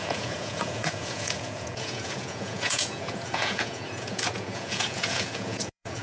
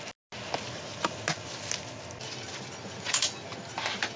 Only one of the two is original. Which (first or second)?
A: second